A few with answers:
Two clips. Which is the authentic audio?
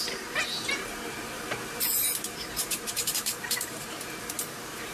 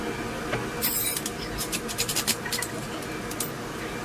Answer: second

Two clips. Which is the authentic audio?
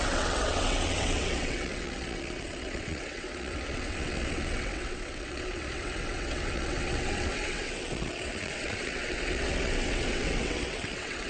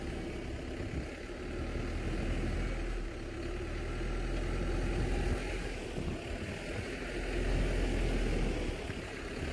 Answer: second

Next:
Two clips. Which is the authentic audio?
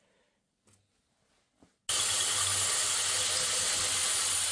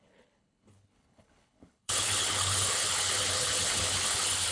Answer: first